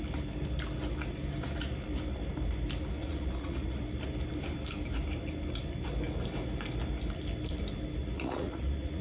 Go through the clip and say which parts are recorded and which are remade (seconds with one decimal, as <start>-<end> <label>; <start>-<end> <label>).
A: 0.0-3.0 recorded; 3.0-3.8 remade; 3.8-8.0 recorded; 8.0-9.0 remade